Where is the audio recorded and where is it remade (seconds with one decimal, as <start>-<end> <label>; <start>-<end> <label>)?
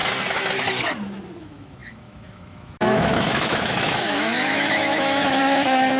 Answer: 0.0-1.4 recorded; 1.4-6.0 remade